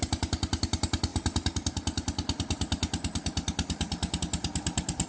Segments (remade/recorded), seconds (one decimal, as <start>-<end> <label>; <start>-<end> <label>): 0.0-5.1 recorded